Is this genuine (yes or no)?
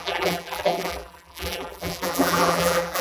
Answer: no